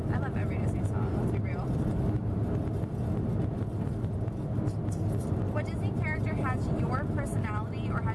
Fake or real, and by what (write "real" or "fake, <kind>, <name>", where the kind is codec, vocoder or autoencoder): real